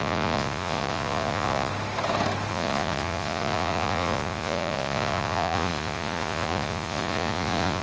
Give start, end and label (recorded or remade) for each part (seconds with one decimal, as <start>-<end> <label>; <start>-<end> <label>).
0.0-1.7 remade; 1.7-2.5 recorded; 2.5-7.8 remade

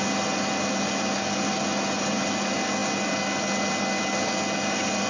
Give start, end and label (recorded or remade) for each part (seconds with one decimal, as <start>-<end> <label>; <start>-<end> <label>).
0.0-5.1 recorded